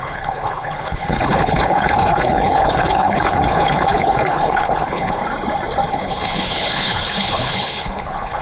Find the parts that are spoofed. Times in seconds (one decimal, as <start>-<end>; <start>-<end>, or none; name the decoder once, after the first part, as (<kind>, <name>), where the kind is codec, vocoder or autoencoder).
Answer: 0.0-5.2 (codec, HILCodec); 5.9-8.4